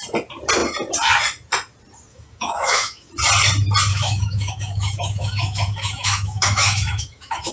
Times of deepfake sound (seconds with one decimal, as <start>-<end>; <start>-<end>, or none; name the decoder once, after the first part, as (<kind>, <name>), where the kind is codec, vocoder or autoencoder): 2.1-3.1 (autoencoder, DAC-VAE); 3.9-7.5